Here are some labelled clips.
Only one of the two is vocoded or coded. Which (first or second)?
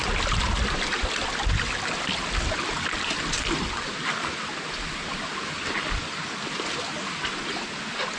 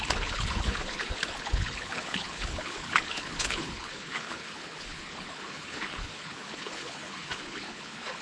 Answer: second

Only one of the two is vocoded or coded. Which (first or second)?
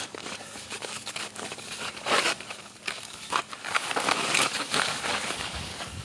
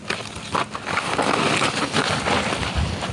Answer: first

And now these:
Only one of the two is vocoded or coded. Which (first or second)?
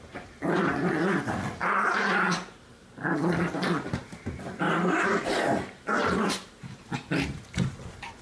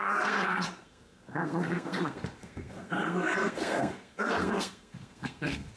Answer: second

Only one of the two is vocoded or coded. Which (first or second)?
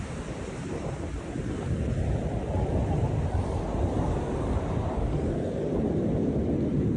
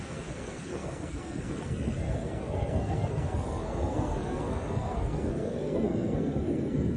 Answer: second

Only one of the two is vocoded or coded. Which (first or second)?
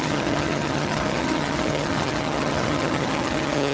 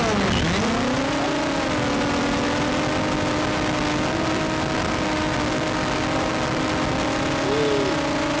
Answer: first